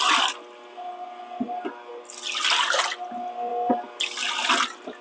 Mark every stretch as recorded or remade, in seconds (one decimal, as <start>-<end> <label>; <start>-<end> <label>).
0.0-5.0 recorded